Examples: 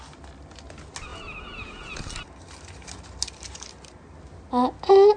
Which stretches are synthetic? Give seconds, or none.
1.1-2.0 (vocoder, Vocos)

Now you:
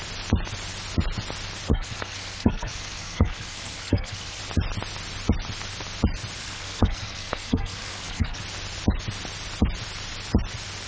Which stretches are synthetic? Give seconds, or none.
1.7-4.4 (codec, SNAC); 6.4-8.4

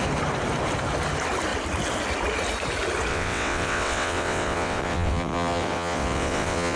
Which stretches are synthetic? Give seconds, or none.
3.1-6.8 (vocoder, WaveNeXt)

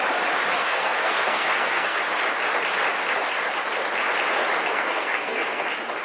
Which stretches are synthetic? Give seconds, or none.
0.6-2.0 (codec, SNAC); 4.7-5.6

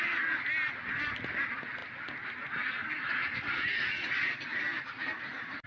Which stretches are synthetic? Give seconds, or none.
none

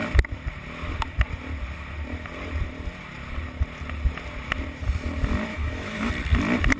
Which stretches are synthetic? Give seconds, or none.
5.5-6.1 (autoencoder, DAC-VAE)

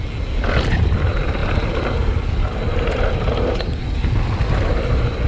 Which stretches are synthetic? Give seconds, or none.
none

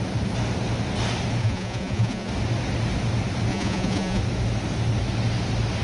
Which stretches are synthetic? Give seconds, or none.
1.4-2.3 (vocoder, Vocos); 3.5-4.2